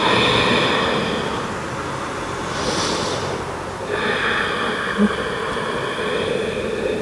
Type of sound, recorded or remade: recorded